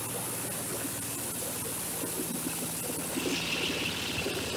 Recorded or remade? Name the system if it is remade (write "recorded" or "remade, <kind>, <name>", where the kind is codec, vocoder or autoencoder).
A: recorded